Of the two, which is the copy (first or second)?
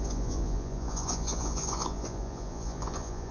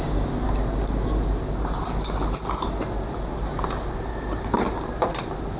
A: first